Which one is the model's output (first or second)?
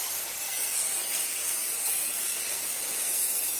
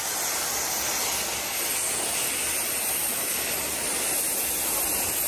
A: first